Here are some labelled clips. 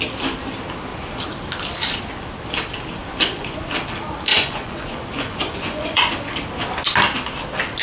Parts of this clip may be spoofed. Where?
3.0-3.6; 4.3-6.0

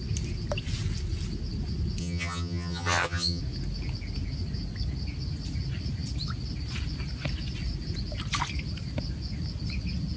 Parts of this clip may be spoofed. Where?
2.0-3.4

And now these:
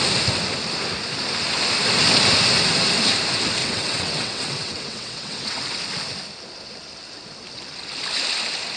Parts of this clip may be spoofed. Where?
3.6-5.6

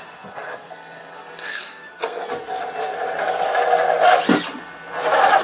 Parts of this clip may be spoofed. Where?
0.0-2.3

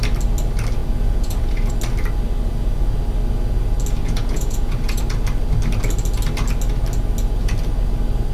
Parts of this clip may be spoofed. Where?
0.8-1.7; 4.0-5.0

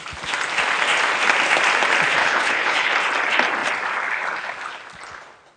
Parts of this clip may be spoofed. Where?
2.2-2.9

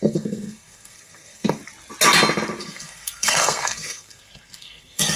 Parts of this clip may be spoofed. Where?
0.0-1.6; 2.6-5.2

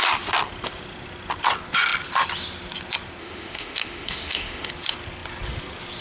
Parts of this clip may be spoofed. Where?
3.2-4.7